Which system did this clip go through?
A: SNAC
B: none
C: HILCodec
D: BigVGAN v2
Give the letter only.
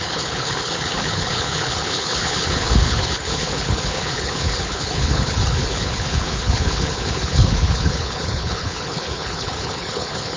C